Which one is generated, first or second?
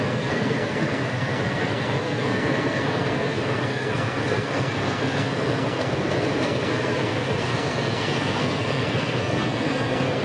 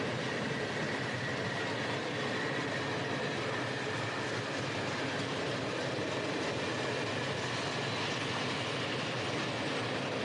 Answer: first